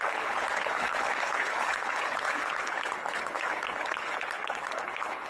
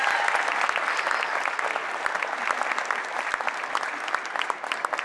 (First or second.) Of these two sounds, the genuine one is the second